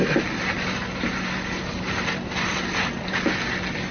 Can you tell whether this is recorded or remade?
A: recorded